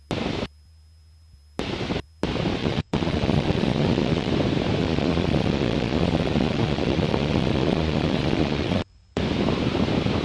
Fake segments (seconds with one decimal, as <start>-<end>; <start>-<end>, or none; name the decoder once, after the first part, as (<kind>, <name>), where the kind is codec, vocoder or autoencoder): 2.6-4.3 (vocoder, Vocos); 4.8-9.2